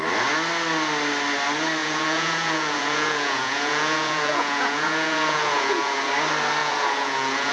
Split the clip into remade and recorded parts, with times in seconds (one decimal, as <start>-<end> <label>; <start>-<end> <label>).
0.0-1.8 recorded; 1.8-6.1 remade; 6.1-6.6 recorded; 6.6-7.5 remade